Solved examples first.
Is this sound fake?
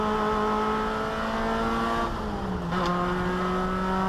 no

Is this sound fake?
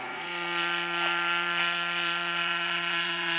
yes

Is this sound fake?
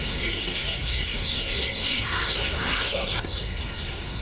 yes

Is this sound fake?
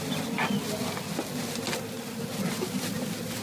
no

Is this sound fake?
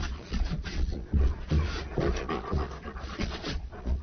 yes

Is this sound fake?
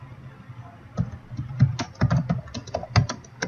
no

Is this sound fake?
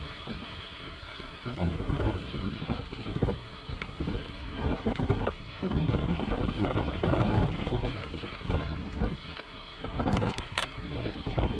yes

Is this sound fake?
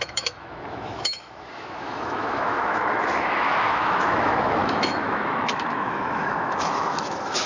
yes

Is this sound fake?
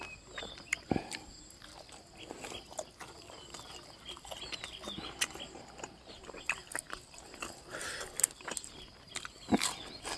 no